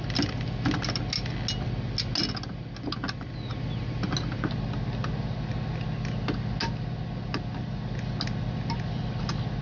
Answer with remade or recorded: recorded